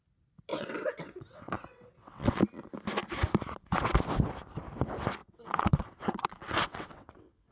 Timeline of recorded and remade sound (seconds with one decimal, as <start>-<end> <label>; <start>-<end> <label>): 0.0-0.5 recorded; 0.5-2.4 remade; 2.4-5.2 recorded; 5.2-7.5 remade